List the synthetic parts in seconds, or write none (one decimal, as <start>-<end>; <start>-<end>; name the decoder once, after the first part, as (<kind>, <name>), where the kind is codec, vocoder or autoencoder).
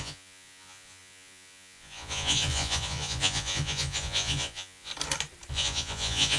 0.0-4.9 (vocoder, Vocos); 5.5-6.4